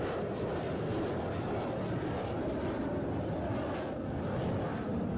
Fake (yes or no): no